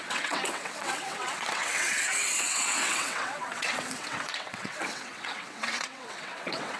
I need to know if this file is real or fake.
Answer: fake